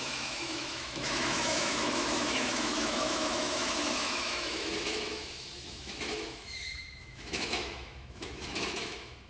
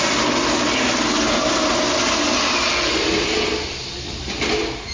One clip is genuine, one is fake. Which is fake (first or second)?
first